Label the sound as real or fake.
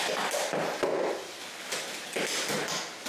real